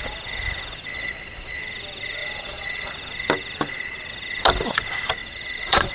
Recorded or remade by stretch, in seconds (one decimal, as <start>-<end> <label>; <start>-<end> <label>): 0.0-0.9 recorded; 0.9-1.6 remade; 1.6-2.2 recorded; 2.2-2.9 remade; 2.9-5.2 recorded; 5.2-5.9 remade